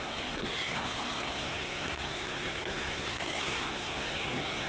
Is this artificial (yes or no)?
yes